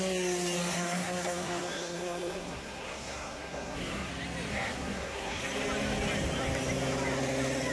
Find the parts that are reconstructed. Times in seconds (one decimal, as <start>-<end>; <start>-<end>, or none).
0.7-4.1; 4.5-5.4